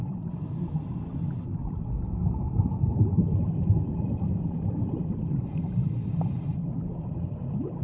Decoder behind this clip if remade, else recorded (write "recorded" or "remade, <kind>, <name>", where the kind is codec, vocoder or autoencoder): remade, vocoder, BigVGAN v2